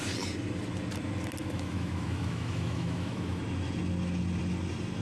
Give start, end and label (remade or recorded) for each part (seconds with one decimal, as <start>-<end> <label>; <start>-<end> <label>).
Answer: 0.0-1.4 recorded; 1.4-3.4 remade; 3.4-5.0 recorded